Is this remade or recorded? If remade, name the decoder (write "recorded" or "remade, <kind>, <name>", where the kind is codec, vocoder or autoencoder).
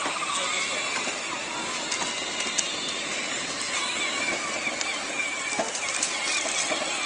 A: recorded